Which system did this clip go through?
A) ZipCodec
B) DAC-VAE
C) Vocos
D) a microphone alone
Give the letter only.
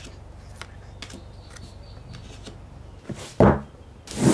D